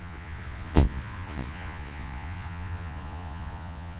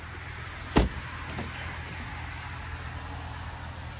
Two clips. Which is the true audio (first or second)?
second